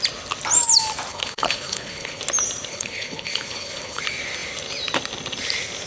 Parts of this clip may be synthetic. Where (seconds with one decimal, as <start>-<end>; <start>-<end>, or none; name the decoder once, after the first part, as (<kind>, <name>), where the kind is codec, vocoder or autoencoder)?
1.1-2.2 (codec, HILCodec); 2.7-4.0